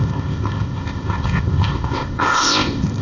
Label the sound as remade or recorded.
remade